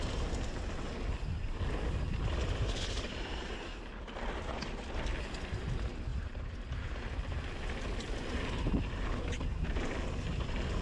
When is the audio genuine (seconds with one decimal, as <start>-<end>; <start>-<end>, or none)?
0.0-10.8